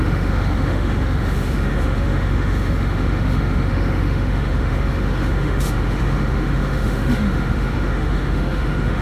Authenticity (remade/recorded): remade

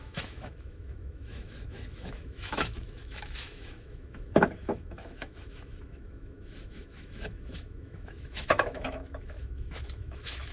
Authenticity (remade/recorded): remade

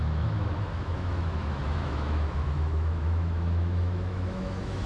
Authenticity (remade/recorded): remade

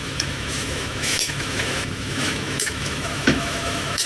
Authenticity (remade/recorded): remade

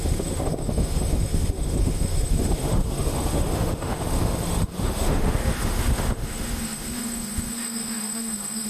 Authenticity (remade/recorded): remade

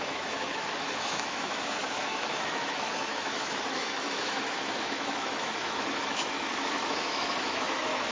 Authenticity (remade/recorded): remade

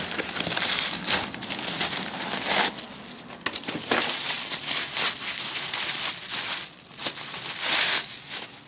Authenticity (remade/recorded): recorded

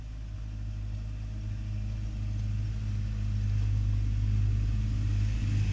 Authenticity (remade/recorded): recorded